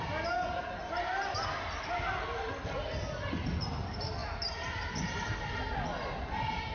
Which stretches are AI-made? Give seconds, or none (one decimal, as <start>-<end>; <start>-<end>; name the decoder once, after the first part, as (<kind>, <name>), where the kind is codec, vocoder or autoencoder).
none